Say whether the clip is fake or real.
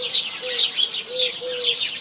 real